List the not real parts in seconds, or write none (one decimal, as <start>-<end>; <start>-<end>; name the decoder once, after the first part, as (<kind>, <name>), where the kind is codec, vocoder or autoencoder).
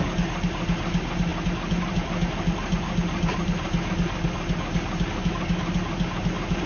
none